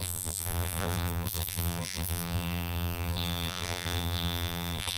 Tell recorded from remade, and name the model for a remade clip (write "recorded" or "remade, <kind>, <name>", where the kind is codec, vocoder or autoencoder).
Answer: remade, vocoder, BigVGAN v2